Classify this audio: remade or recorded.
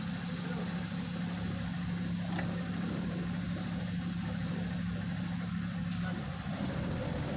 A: recorded